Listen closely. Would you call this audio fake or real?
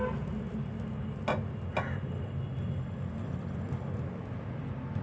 real